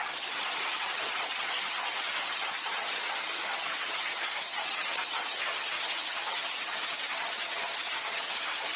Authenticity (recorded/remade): remade